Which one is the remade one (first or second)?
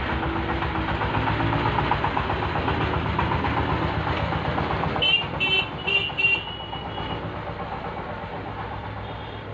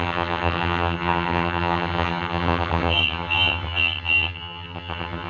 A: second